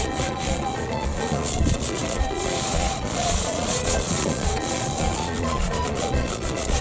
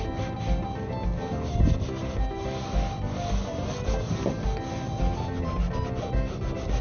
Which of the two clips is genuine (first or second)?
second